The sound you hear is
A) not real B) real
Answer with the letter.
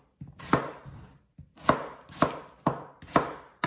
B